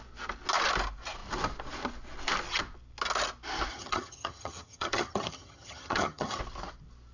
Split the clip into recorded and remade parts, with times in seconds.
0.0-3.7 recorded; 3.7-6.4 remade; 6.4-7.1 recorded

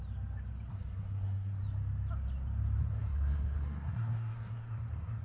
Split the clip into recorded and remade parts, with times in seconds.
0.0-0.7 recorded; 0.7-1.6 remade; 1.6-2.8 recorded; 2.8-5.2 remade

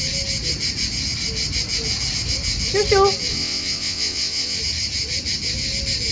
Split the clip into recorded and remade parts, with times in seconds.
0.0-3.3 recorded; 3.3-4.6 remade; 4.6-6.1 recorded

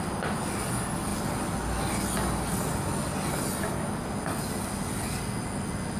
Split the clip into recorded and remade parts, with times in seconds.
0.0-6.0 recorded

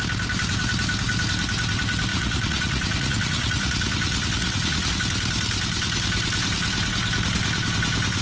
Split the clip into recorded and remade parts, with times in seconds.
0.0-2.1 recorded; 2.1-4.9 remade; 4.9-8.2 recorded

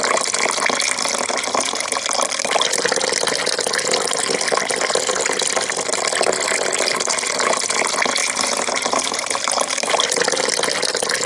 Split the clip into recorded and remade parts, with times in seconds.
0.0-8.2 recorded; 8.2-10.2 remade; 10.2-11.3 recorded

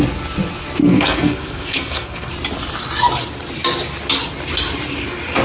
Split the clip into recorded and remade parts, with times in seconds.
0.0-0.8 recorded; 0.8-2.3 remade; 2.3-5.4 recorded

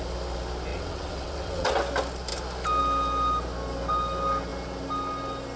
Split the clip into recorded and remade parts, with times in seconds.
0.0-0.7 recorded; 0.7-1.7 remade; 1.7-5.6 recorded